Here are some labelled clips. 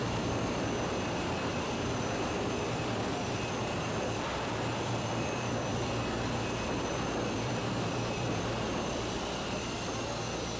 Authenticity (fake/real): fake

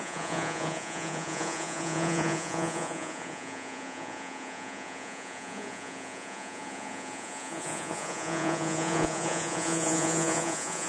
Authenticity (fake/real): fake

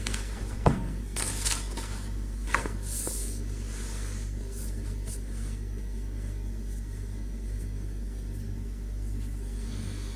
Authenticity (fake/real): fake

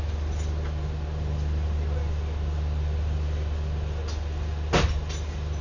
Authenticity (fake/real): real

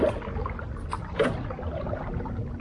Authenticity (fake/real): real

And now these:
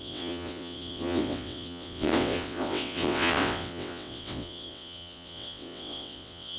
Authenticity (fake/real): fake